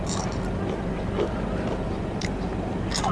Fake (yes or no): no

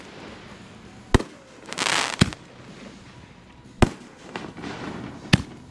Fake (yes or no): no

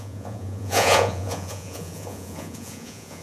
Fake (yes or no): yes